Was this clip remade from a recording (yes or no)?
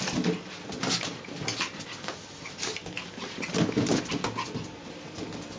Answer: no